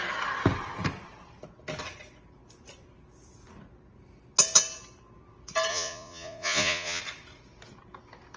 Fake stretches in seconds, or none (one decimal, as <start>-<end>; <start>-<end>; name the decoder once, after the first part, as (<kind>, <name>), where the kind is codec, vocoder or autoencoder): 5.7-7.0 (vocoder, Vocos)